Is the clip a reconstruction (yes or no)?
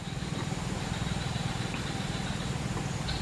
no